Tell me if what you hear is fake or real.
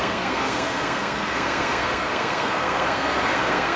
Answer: fake